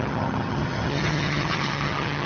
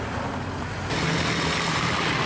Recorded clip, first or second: second